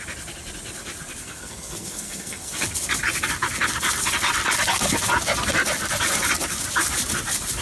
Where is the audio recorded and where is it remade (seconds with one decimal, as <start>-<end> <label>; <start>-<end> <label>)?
0.0-1.2 recorded; 1.2-2.5 remade; 2.5-7.6 recorded